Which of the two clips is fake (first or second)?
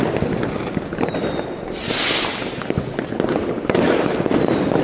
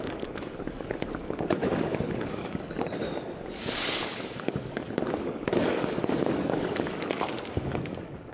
second